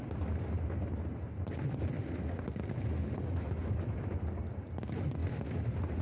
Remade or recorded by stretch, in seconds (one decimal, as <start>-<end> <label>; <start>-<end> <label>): 0.0-3.6 recorded; 3.6-4.2 remade; 4.2-5.2 recorded; 5.2-6.0 remade